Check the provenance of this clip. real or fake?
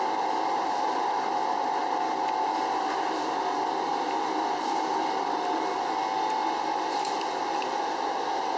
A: real